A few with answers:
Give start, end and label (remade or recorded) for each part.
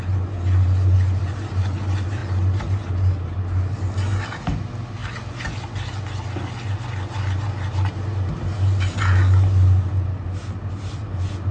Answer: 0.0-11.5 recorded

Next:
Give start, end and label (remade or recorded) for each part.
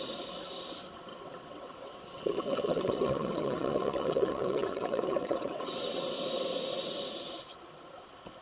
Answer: 0.0-1.1 recorded; 1.1-6.1 remade; 6.1-8.4 recorded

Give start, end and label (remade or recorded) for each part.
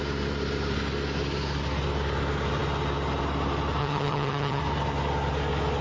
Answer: 0.0-3.8 recorded; 3.8-4.6 remade; 4.6-5.8 recorded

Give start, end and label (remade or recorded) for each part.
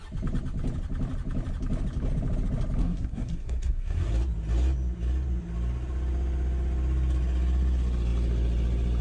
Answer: 0.0-2.8 recorded; 2.8-4.1 remade; 4.1-9.0 recorded